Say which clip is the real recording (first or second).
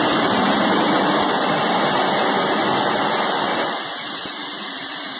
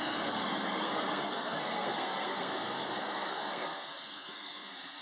first